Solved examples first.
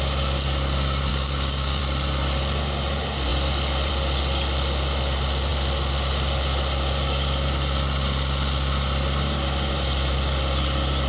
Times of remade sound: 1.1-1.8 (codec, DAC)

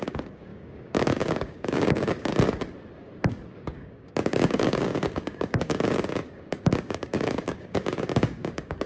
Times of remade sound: 0.0-2.3 (codec, DAC); 3.5-8.9

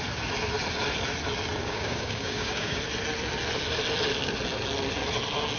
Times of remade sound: 1.6-2.8 (codec, DAC)

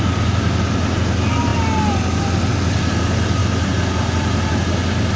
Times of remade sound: none

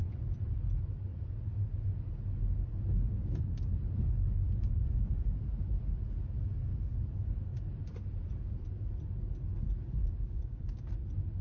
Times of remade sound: 10.0-10.9 (codec, DAC)

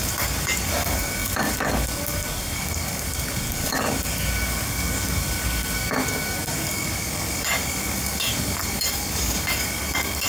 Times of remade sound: 0.0-10.3 (codec, DAC)

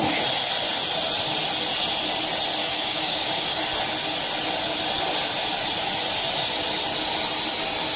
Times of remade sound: 2.6-3.6 (codec, DAC)

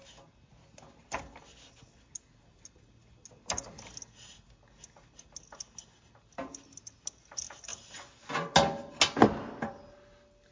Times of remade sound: none